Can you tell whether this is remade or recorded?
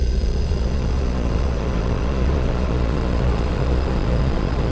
remade